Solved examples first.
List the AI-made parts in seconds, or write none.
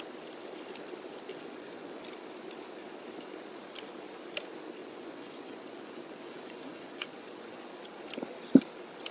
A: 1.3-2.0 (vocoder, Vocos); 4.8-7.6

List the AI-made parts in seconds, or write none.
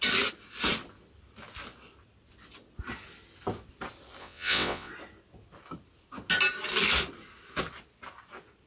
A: 4.2-4.9 (vocoder, WaveNeXt)